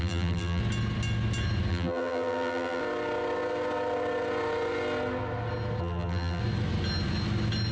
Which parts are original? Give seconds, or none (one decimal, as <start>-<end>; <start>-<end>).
0.6-1.7; 2.8-5.8; 6.4-7.7